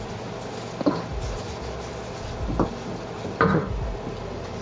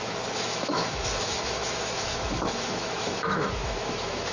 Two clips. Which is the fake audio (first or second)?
second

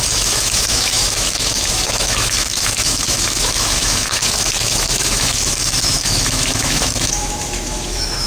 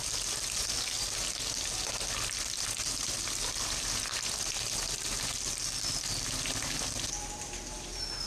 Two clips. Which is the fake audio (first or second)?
first